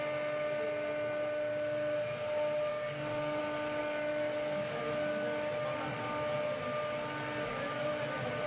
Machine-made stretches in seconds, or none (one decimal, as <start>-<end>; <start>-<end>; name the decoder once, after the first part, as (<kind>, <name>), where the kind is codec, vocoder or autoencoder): 2.7-3.4 (codec, DAC); 3.8-4.6